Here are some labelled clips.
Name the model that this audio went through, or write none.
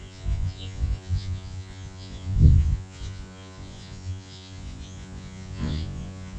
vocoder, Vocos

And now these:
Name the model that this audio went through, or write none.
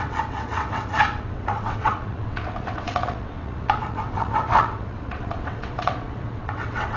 vocoder, WaveNeXt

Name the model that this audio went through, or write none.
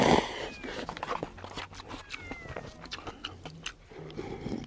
none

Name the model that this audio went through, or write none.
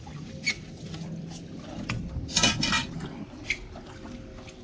none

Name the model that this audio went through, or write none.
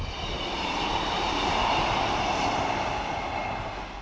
none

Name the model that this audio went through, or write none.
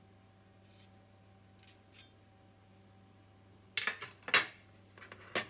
none